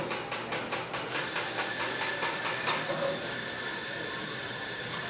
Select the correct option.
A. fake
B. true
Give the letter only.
B